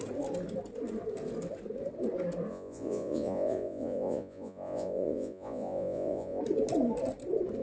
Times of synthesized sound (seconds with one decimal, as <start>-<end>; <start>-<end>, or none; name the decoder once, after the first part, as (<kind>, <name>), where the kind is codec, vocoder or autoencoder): 2.5-6.4 (vocoder, Vocos)